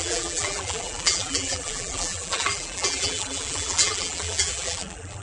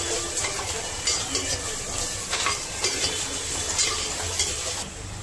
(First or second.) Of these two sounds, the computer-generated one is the first